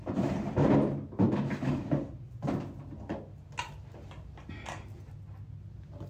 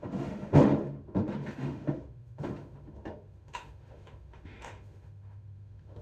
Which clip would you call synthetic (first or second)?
second